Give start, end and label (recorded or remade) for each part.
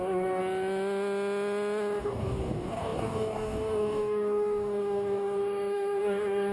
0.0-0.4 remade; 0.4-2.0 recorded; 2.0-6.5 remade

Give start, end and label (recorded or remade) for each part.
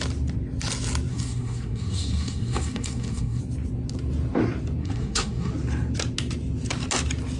0.0-1.1 recorded; 1.1-3.4 remade; 3.4-4.8 recorded; 4.8-5.5 remade; 5.5-7.4 recorded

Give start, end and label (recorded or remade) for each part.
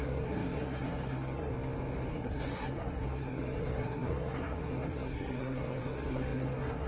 0.0-1.5 remade; 1.5-2.1 recorded; 2.1-6.9 remade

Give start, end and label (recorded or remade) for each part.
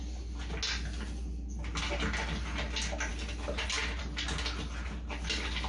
0.0-5.7 recorded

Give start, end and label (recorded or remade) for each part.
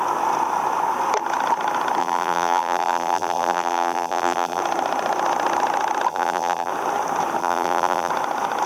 0.0-2.0 recorded; 2.0-4.6 remade; 4.6-6.1 recorded; 6.1-6.7 remade; 6.7-7.4 recorded; 7.4-8.1 remade; 8.1-8.7 recorded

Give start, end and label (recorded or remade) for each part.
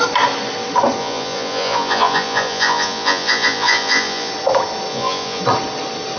0.0-1.0 recorded; 1.0-4.3 remade; 4.3-4.9 recorded; 4.9-5.4 remade; 5.4-6.2 recorded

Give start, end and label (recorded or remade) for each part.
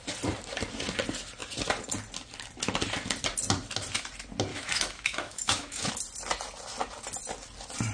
0.0-4.5 recorded; 4.5-5.9 remade; 5.9-7.9 recorded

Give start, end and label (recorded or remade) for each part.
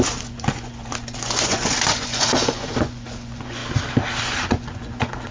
0.0-3.6 remade; 3.6-4.2 recorded; 4.2-5.3 remade